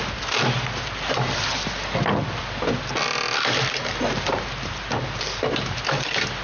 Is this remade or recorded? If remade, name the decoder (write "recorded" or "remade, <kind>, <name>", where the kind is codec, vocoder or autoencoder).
recorded